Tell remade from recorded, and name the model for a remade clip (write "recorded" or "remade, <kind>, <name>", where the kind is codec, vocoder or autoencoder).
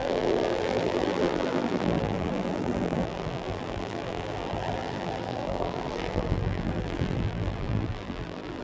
remade, vocoder, BigVGAN v2